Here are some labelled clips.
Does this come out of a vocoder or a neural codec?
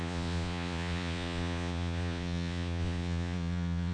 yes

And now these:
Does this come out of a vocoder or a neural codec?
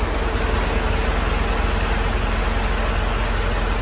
no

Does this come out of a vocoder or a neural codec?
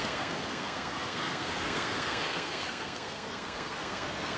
yes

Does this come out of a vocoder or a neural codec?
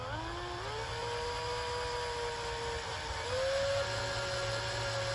no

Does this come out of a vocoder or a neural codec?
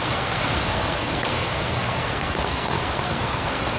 yes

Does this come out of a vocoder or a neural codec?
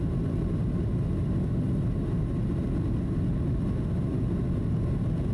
no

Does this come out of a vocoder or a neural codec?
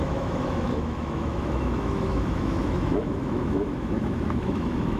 yes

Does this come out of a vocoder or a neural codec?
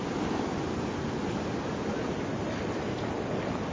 no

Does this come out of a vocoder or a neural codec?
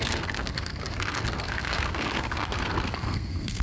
yes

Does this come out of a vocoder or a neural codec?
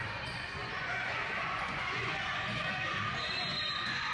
yes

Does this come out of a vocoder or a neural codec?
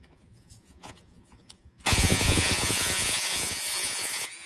yes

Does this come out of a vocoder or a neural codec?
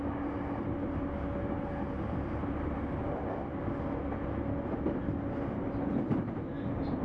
no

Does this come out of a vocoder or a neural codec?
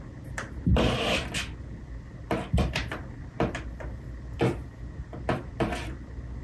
yes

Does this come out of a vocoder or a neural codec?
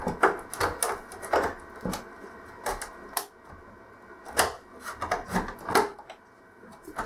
no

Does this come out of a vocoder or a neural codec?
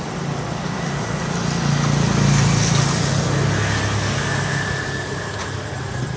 no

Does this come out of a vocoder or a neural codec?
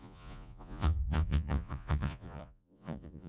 yes